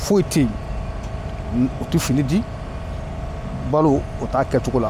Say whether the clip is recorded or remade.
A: recorded